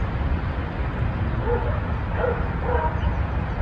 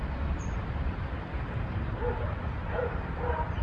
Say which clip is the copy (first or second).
second